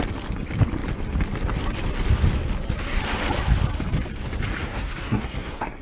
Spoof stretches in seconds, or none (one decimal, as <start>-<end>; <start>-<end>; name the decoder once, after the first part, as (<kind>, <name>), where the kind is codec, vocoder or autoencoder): 4.6-5.8 (codec, SNAC)